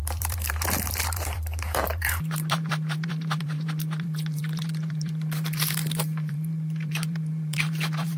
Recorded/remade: remade